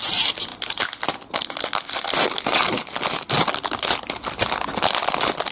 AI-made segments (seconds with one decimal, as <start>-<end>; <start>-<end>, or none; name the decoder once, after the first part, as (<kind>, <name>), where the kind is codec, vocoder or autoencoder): none